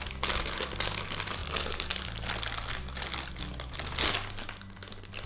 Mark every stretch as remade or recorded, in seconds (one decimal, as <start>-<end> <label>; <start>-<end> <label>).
0.0-5.3 recorded